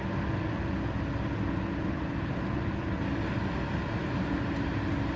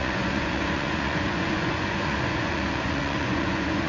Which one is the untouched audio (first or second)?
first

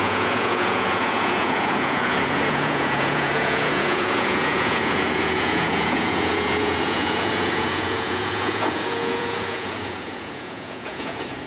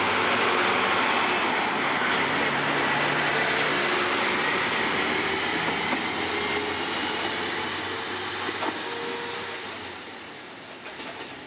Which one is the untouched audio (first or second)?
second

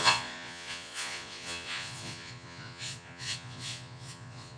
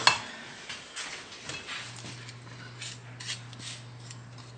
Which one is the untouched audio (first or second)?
second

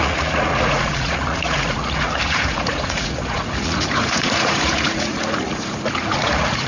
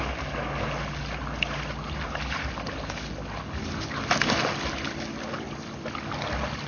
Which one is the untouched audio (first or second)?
second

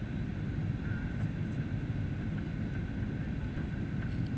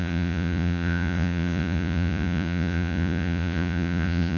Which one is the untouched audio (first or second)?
first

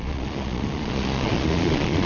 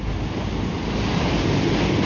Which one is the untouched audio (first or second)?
second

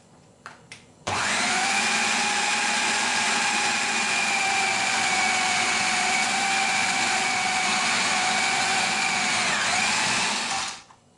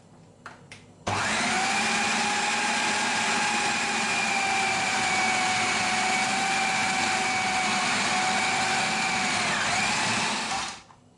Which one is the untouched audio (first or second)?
second